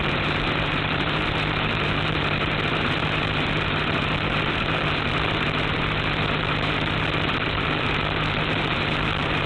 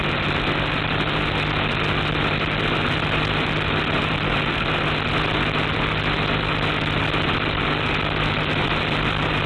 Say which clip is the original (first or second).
second